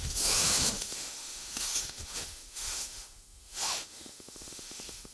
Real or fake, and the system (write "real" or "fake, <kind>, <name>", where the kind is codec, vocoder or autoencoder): fake, autoencoder, DAC-VAE